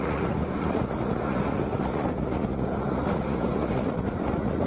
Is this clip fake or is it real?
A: fake